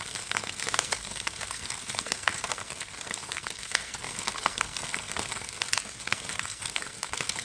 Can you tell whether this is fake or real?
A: fake